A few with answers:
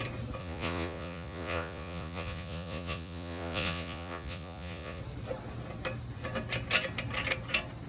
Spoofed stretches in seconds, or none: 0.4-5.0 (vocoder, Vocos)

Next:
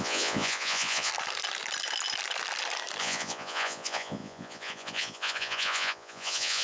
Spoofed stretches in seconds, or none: 0.0-1.1 (vocoder, Vocos); 3.0-6.6